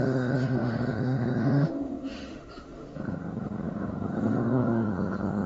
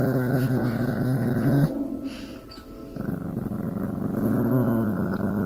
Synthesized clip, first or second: first